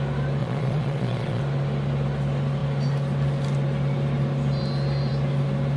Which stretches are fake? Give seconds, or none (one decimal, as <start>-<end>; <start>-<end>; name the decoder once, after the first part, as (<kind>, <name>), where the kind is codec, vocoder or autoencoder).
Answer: 0.4-1.4 (vocoder, Vocos)